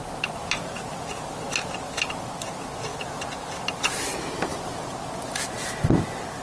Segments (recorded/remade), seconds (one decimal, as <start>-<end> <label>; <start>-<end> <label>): 0.0-6.4 recorded